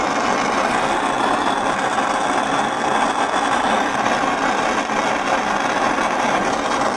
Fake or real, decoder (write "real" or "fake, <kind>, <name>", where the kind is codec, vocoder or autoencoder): real